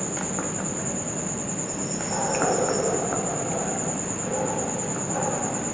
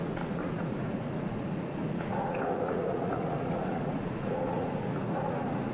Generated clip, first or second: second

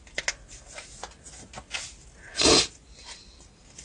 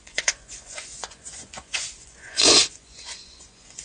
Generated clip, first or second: second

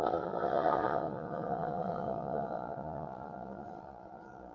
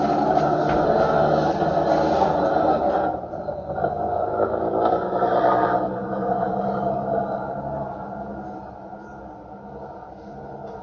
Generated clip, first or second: first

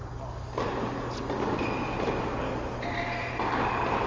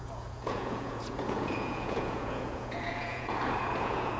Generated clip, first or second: second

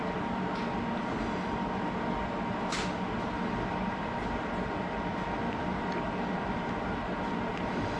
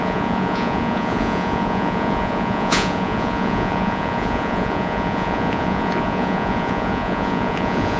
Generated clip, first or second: second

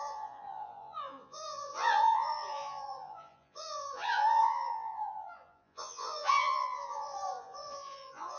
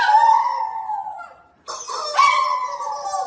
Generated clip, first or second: first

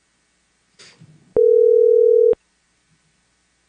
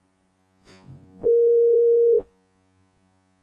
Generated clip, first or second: second